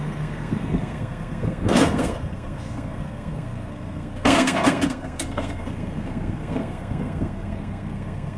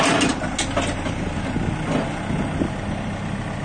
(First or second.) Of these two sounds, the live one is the second